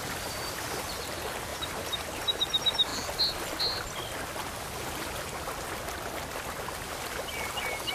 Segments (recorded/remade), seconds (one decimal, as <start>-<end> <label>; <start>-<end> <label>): 0.0-1.5 recorded; 1.5-2.4 remade; 2.4-7.9 recorded